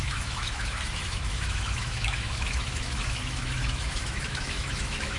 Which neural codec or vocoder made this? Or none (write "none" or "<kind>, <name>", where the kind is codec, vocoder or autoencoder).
autoencoder, DAC-VAE